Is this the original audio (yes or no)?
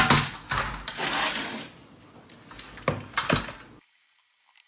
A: yes